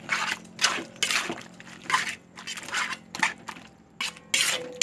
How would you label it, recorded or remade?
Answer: recorded